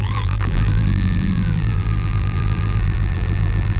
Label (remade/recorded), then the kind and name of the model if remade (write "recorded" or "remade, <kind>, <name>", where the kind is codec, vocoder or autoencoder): remade, vocoder, BigVGAN v2